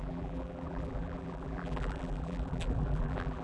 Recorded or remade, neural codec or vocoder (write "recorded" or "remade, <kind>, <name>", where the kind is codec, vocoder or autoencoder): remade, vocoder, BigVGAN v2